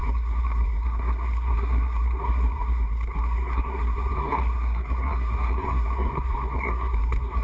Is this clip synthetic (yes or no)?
yes